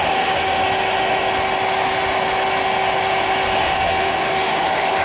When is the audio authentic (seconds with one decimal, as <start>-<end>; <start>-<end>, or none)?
0.6-3.6